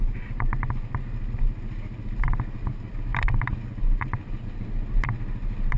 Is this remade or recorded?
recorded